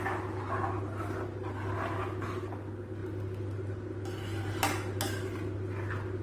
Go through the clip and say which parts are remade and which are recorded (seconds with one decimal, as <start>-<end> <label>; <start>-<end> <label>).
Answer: 0.0-6.2 recorded